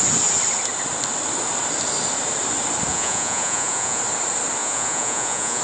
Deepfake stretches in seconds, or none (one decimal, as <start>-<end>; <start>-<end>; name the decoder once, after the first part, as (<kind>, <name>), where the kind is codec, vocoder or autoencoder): 2.9-4.0 (vocoder, Vocos); 4.6-5.6

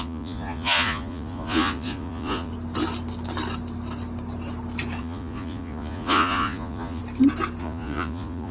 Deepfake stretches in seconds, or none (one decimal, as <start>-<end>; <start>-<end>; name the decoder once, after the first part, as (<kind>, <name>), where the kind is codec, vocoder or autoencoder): 0.0-2.5 (vocoder, Vocos); 5.0-7.0; 7.6-8.5